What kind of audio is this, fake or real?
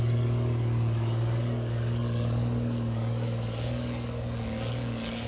fake